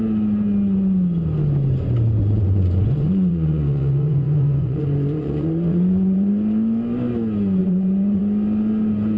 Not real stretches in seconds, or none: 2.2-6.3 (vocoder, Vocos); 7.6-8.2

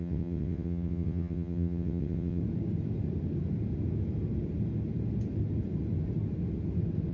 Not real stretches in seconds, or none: 0.0-2.4 (vocoder, WaveNeXt)